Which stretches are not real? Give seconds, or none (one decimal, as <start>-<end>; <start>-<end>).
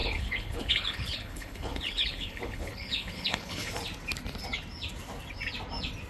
0.0-3.7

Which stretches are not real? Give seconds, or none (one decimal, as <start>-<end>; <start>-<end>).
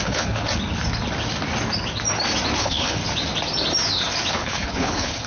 0.0-0.5; 2.6-3.0; 4.3-5.3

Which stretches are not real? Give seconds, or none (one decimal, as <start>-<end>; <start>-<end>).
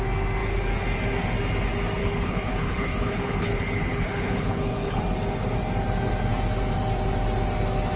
2.0-5.0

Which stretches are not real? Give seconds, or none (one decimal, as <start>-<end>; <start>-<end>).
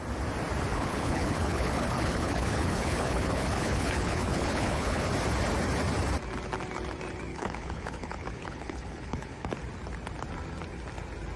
0.7-5.1; 7.3-9.5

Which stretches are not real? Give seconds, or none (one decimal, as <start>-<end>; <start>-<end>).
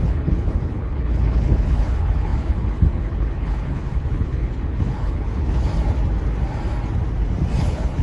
0.0-5.7; 7.6-8.0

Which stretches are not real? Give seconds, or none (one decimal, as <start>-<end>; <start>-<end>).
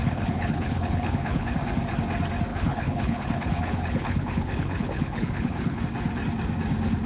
0.0-1.5; 2.5-5.8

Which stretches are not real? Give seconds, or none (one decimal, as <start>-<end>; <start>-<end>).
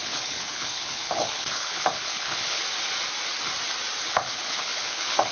0.0-2.6; 4.0-5.3